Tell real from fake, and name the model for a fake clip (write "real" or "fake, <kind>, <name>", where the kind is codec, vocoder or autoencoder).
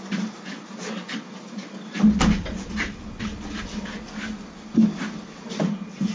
real